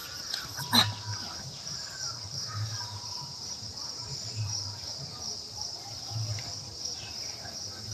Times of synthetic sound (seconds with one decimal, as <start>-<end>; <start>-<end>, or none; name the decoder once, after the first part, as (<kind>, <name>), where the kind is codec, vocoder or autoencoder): 1.4-7.9 (vocoder, BigVGAN v2)